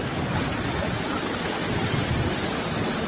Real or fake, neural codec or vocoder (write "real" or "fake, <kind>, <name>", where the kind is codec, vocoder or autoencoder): real